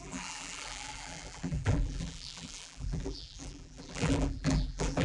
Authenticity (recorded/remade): remade